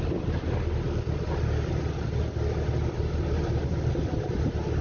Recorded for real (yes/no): yes